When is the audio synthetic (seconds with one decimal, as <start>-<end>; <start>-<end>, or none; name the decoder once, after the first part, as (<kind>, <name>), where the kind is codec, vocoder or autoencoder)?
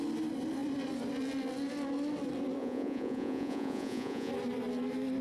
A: 2.6-4.3 (vocoder, Vocos)